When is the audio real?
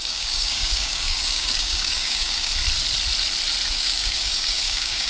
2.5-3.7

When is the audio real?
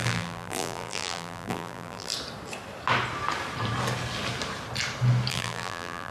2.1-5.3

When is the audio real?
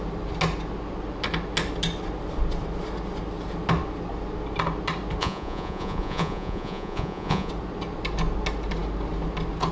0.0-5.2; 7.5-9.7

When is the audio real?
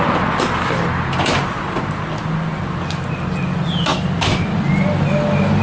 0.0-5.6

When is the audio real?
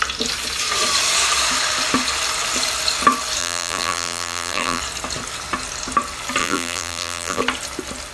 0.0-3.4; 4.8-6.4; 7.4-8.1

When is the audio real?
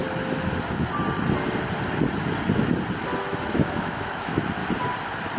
0.0-3.2; 4.6-5.4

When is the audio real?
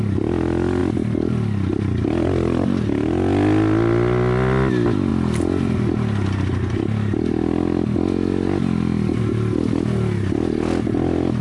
0.0-11.4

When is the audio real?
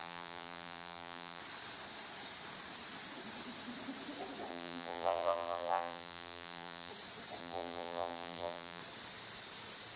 1.4-4.5; 6.9-7.4; 8.8-10.0